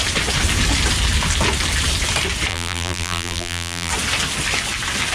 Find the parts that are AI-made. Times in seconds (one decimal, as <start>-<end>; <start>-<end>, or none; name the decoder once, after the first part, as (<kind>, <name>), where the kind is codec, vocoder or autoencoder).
2.5-3.9 (vocoder, BigVGAN v2)